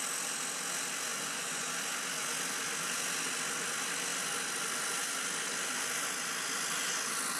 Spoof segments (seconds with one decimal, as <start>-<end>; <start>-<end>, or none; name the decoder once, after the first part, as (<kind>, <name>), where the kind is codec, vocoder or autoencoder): 1.1-1.8 (vocoder, Vocos)